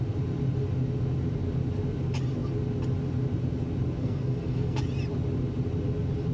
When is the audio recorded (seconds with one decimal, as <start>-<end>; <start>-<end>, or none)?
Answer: 0.0-4.0; 4.8-6.3